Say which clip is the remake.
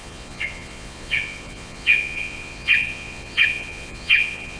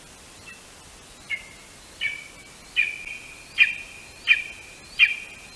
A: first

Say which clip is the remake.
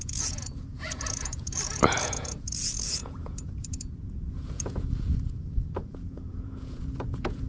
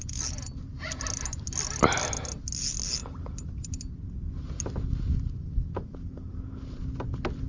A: first